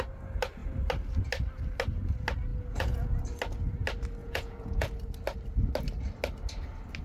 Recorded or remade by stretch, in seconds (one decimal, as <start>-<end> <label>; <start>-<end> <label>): 0.0-2.5 recorded; 2.5-3.2 remade; 3.2-4.2 recorded; 4.2-4.9 remade; 4.9-7.0 recorded